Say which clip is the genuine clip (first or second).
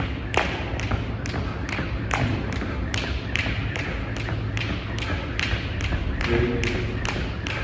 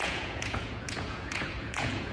first